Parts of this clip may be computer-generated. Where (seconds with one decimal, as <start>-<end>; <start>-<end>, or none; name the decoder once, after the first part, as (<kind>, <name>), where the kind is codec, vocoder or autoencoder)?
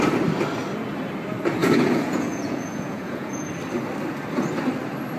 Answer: 1.6-3.5 (vocoder, Vocos)